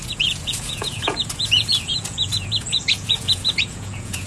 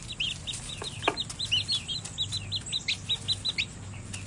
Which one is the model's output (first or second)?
first